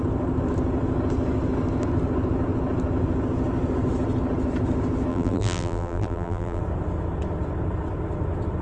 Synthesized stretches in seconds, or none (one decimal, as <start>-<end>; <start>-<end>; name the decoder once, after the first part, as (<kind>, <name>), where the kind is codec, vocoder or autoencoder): 5.1-6.6 (vocoder, BigVGAN v2)